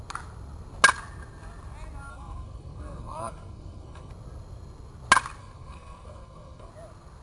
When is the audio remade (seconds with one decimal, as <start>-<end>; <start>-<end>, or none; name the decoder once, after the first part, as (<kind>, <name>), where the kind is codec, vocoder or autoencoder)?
2.1-4.1 (codec, SNAC); 5.4-6.7